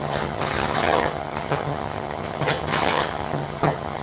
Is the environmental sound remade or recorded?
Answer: remade